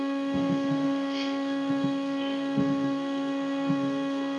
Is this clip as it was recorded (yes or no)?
no